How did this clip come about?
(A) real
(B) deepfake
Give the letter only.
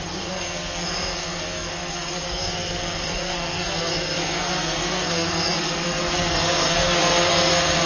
B